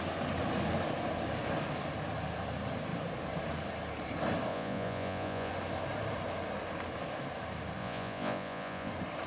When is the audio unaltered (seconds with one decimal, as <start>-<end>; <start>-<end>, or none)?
0.0-4.5; 5.5-7.8; 8.9-9.3